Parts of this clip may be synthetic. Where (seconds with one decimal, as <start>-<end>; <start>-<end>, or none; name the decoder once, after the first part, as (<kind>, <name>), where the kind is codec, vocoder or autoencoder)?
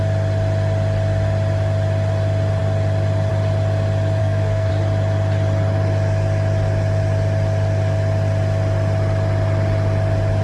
4.2-4.7 (codec, SNAC)